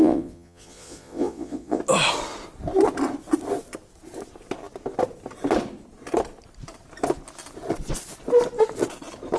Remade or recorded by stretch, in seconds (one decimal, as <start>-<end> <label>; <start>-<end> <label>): 0.0-1.8 remade; 1.8-9.4 recorded

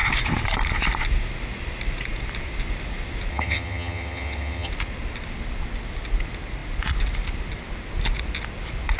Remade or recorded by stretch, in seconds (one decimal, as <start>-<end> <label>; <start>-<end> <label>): 0.0-3.3 recorded; 3.3-4.7 remade; 4.7-9.0 recorded